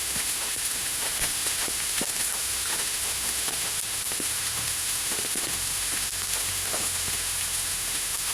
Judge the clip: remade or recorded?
remade